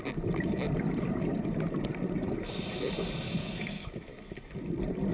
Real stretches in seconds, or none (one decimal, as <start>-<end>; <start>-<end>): 0.0-3.4; 4.3-5.1